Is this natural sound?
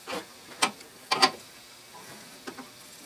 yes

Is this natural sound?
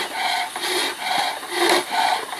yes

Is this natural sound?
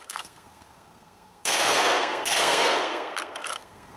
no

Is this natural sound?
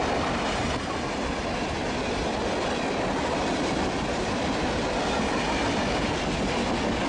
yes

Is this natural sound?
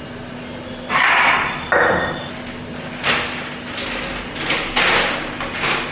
yes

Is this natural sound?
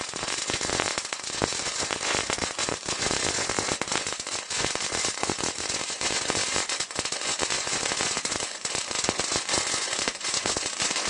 no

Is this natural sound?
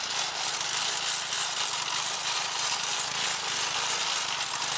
yes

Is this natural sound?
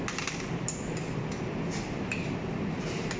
yes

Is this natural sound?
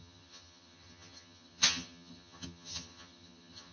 no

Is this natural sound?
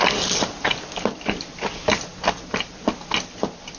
yes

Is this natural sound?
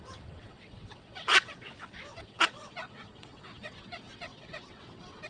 no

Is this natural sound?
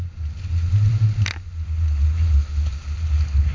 yes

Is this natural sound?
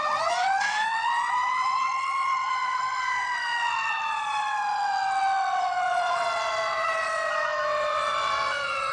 no